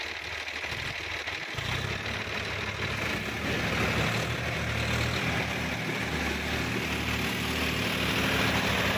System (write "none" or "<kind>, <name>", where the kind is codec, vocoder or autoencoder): none